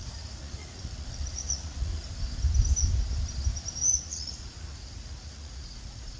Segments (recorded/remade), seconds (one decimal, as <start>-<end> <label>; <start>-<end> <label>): 0.0-2.0 remade; 2.0-3.9 recorded; 3.9-6.2 remade